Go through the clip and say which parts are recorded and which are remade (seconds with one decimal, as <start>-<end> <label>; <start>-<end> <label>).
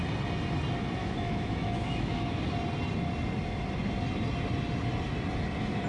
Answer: 0.0-1.0 recorded; 1.0-2.4 remade; 2.4-5.9 recorded